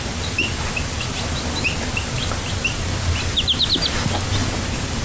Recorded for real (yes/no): yes